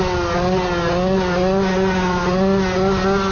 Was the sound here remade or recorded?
recorded